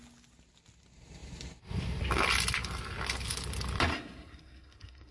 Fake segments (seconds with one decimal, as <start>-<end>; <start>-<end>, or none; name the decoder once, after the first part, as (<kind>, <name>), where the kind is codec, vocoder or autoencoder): 3.9-5.1 (codec, SNAC)